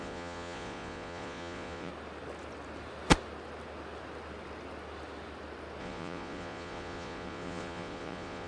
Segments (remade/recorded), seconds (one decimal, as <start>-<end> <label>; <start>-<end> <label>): 0.0-1.9 remade; 1.9-5.8 recorded; 5.8-8.5 remade